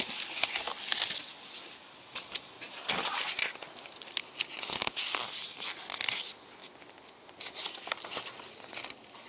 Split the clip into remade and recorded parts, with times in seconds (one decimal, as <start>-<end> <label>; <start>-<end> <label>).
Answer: 0.0-9.3 recorded